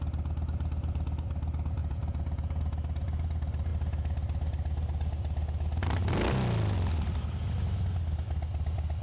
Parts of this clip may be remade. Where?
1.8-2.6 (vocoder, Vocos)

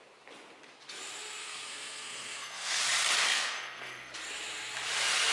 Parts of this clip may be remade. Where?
1.4-2.8 (codec, SNAC); 3.3-4.1